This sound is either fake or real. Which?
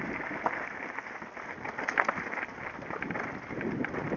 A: real